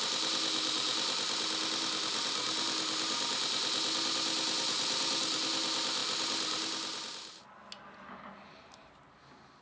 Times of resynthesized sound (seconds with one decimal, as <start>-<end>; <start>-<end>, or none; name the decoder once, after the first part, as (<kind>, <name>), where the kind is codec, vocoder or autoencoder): none